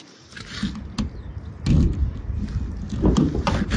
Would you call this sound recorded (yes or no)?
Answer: yes